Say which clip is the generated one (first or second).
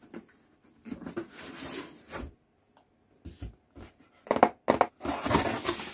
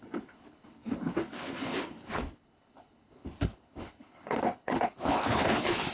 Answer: second